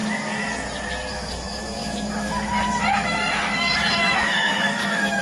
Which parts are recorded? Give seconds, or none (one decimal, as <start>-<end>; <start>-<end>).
0.0-1.1